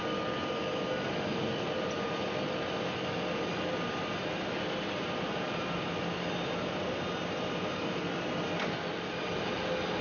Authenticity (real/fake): real